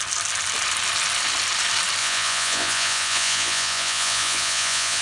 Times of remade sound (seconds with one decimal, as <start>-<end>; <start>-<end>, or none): 2.0-5.0